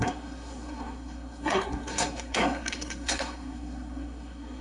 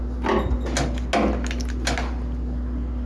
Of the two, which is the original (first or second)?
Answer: second